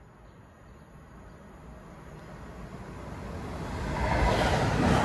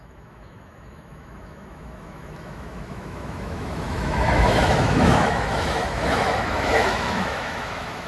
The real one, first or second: first